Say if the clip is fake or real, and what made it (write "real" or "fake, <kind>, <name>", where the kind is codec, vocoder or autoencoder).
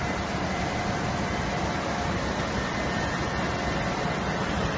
real